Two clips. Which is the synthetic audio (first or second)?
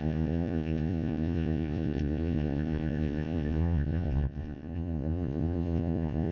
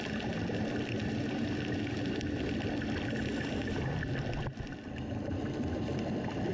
first